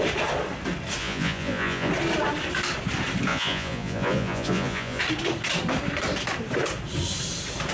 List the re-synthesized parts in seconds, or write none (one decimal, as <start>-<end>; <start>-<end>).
1.0-1.9; 3.3-5.0